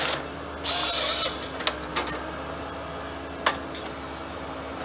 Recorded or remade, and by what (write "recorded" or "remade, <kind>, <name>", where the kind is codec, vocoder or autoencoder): recorded